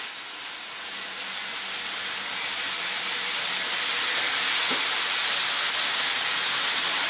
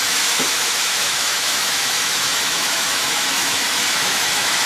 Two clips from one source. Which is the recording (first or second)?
first